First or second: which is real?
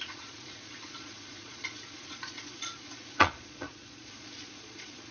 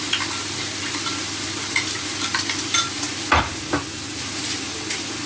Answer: second